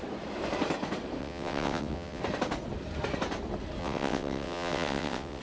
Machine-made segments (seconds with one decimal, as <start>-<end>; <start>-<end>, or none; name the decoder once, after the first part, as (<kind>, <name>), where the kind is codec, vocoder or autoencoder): 1.2-2.2 (vocoder, WaveNeXt); 3.8-5.4